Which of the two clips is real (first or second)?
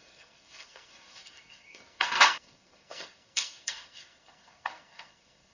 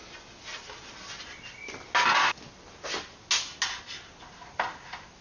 second